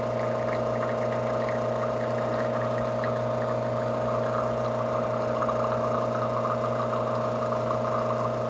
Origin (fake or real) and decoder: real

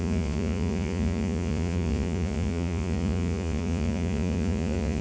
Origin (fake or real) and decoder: fake, vocoder, Vocos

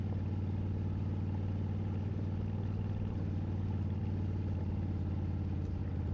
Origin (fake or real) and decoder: real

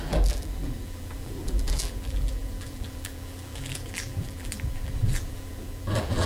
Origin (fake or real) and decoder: fake, vocoder, BigVGAN v2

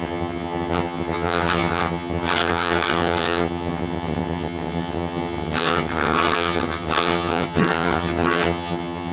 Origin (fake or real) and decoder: fake, vocoder, HiFi-GAN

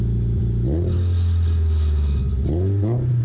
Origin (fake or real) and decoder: real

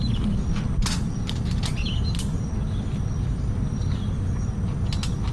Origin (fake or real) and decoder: real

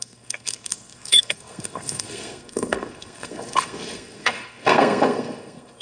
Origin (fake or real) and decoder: fake, codec, SNAC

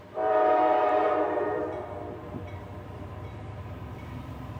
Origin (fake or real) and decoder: fake, vocoder, BigVGAN v2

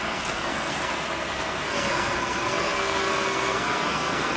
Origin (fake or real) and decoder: fake, codec, SNAC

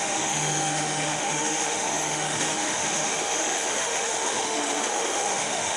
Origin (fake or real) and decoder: fake, autoencoder, DAC-VAE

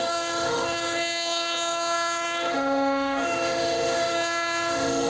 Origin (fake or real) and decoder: fake, autoencoder, DAC-VAE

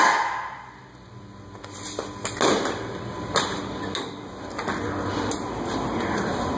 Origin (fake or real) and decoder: real